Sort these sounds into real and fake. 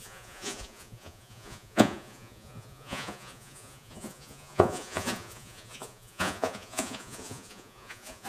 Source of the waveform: fake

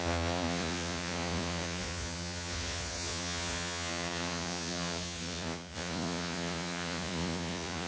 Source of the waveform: fake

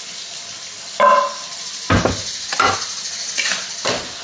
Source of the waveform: real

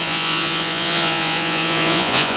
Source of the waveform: fake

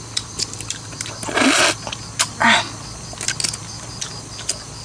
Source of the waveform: real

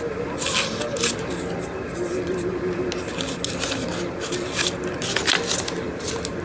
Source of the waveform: real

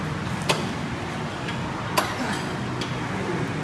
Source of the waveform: real